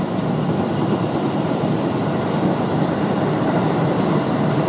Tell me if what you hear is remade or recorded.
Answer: recorded